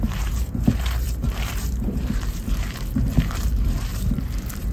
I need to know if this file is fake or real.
fake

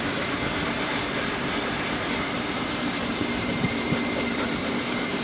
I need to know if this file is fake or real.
fake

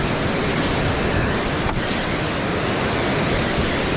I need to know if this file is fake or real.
real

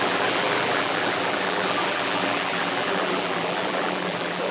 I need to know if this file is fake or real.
fake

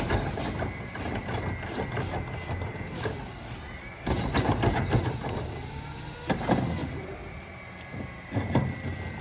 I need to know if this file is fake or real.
real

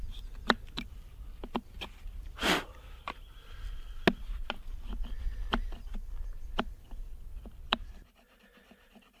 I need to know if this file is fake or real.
real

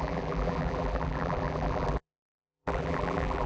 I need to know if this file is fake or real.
fake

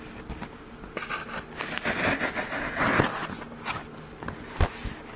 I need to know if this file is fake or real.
real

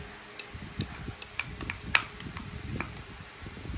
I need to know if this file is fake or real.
fake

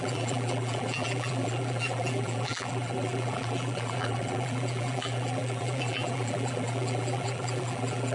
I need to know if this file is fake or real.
fake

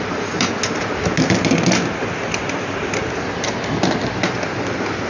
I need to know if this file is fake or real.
real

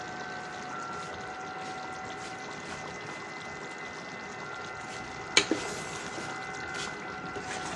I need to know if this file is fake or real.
real